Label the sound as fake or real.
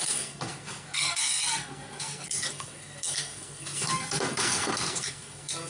fake